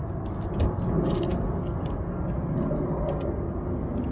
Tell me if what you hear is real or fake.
real